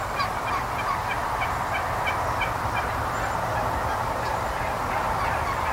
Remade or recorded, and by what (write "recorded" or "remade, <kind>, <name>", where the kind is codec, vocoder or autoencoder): recorded